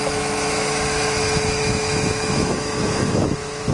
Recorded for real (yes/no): no